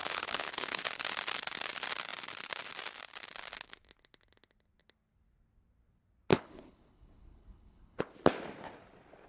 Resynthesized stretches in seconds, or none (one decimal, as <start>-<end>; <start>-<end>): 0.0-0.8; 6.3-8.0

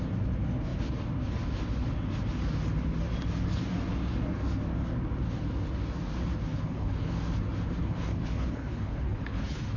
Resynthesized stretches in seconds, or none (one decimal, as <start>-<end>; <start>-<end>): 6.5-7.1; 7.8-9.8

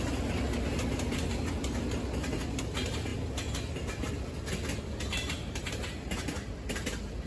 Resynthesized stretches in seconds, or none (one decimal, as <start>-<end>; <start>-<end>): none

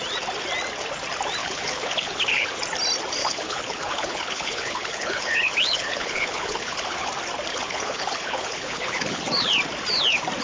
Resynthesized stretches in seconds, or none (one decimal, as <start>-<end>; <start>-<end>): 1.4-2.6; 3.2-7.1; 7.5-9.2